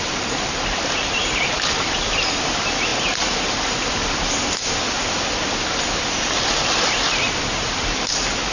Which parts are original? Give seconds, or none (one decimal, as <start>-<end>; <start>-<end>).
0.0-8.5